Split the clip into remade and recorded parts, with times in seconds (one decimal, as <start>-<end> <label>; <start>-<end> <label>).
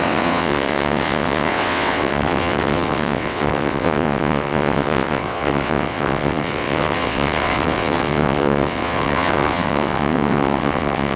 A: 0.0-11.2 remade